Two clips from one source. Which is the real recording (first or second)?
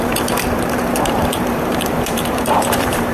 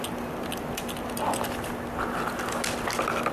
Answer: second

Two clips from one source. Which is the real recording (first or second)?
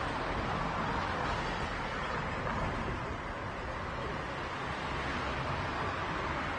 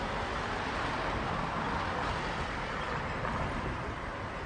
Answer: first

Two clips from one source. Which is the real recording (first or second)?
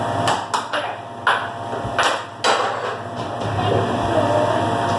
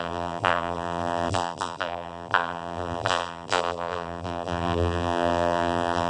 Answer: first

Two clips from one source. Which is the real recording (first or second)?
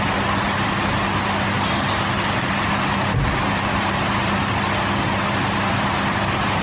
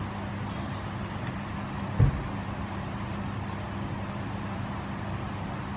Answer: first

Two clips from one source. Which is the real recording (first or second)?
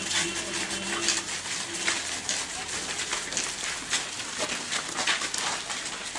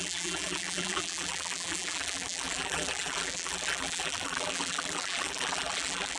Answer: first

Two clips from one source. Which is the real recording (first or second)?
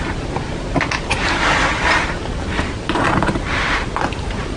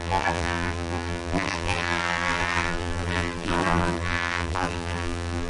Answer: first